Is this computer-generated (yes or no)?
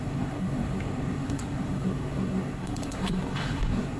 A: yes